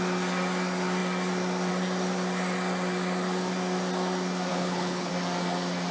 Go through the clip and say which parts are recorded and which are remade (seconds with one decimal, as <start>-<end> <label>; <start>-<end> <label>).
0.0-4.5 recorded; 4.5-5.1 remade; 5.1-5.9 recorded